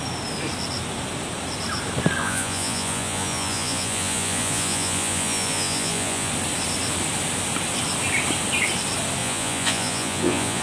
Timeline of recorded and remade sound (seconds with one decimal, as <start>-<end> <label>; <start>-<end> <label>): 0.0-2.2 recorded; 2.2-6.3 remade; 6.3-9.2 recorded; 9.2-10.6 remade